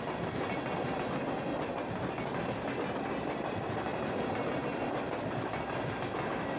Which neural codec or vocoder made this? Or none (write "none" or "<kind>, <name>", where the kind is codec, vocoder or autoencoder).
none